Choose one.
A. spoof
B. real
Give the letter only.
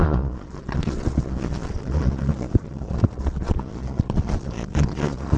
A